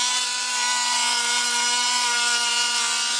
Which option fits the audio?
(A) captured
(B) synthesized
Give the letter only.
A